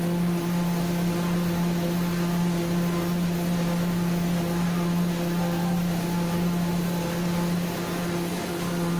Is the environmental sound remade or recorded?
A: recorded